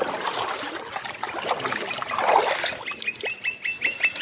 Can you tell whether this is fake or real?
real